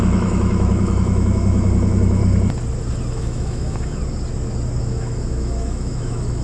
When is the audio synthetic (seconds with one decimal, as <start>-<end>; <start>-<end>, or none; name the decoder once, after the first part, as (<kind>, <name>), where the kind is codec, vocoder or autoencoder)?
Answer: 0.0-2.2 (autoencoder, DAC-VAE); 3.1-4.0; 4.8-6.4